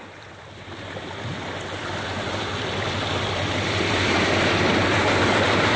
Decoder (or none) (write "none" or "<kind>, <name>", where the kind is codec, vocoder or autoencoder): none